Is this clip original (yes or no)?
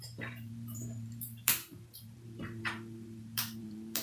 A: no